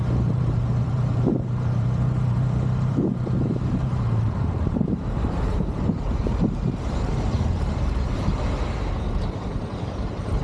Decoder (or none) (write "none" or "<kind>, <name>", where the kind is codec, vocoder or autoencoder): vocoder, BigVGAN v2